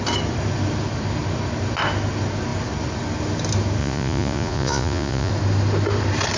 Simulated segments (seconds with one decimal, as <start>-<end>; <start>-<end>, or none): 3.8-5.3